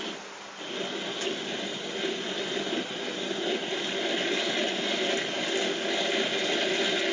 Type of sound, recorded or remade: recorded